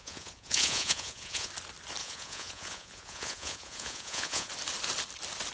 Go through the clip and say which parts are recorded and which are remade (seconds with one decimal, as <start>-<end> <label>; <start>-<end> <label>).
0.0-1.5 remade; 1.5-2.0 recorded; 2.0-4.5 remade; 4.5-5.5 recorded